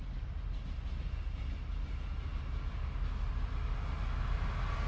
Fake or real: real